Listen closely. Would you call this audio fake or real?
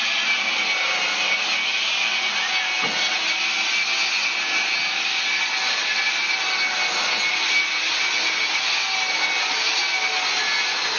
real